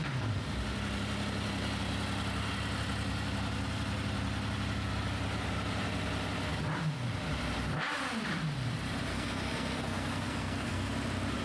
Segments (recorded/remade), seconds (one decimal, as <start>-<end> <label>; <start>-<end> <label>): 0.0-9.1 recorded; 9.1-10.9 remade; 10.9-11.4 recorded